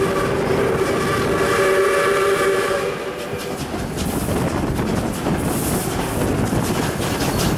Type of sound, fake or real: real